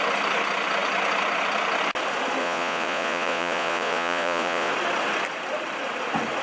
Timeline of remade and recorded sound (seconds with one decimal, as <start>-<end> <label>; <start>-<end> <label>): 0.0-2.4 recorded; 2.4-4.7 remade; 4.7-6.4 recorded